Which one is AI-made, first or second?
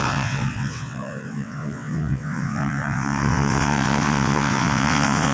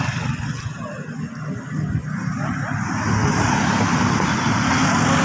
first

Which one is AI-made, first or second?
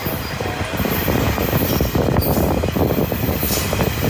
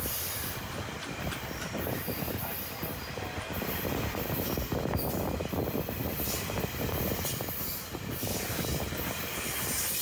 second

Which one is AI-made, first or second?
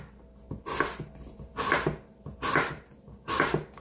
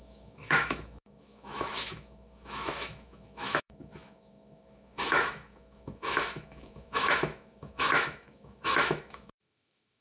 second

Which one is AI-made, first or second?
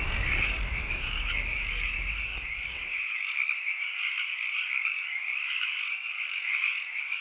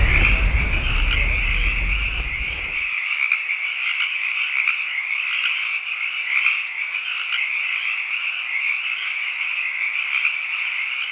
first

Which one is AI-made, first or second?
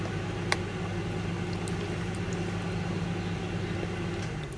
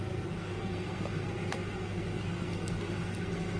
second